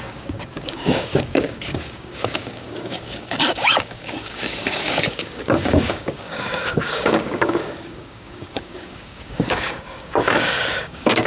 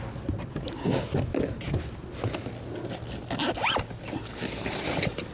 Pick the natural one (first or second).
second